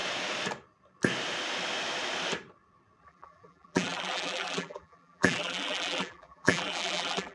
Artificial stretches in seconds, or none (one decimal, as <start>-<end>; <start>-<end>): 3.0-7.3